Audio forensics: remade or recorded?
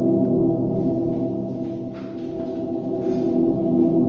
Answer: recorded